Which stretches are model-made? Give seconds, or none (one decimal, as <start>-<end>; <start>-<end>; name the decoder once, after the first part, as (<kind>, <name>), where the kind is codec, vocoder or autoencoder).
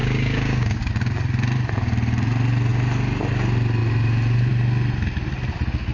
0.0-0.9 (codec, DAC)